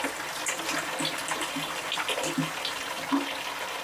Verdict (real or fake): real